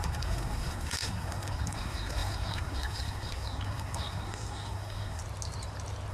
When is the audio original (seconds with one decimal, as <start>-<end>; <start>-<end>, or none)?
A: 5.2-6.1

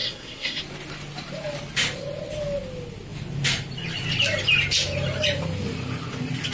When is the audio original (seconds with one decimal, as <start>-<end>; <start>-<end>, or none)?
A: 0.6-6.5

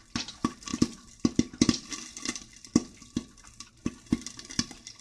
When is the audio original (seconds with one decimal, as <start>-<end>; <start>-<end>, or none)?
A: 0.0-5.0

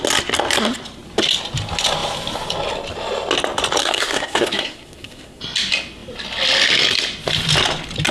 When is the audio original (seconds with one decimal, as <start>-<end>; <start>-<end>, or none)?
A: 0.0-3.8; 5.4-8.1

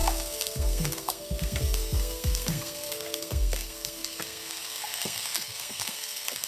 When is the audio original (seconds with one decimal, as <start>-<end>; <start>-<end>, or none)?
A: none